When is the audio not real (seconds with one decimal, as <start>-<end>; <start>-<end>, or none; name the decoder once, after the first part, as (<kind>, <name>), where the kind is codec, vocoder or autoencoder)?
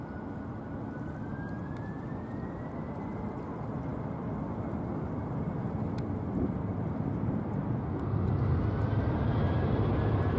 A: none